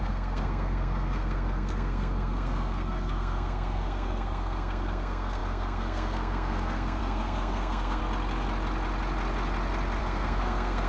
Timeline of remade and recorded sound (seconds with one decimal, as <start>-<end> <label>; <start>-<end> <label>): 0.0-8.0 remade; 8.0-10.0 recorded; 10.0-10.9 remade